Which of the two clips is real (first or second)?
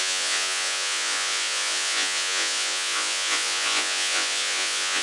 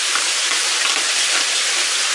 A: second